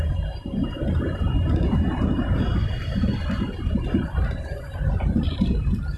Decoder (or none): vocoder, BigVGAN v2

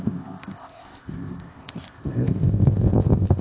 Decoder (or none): codec, ZipCodec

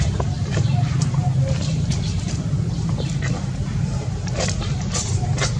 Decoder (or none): vocoder, BigVGAN v2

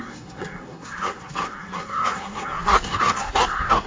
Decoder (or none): codec, SNAC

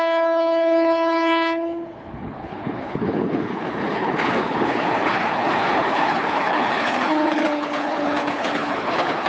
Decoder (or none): codec, HILCodec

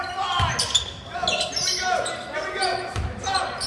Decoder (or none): none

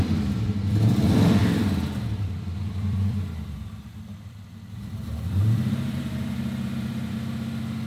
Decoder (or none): vocoder, BigVGAN v2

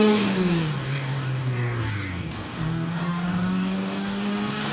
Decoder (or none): codec, DAC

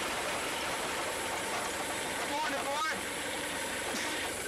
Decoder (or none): vocoder, BigVGAN v2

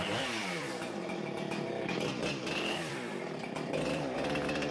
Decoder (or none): vocoder, BigVGAN v2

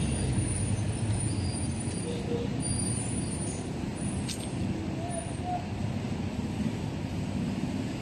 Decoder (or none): none